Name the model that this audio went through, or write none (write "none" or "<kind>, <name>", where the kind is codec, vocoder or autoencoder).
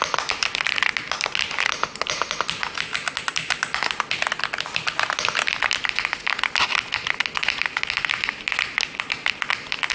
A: none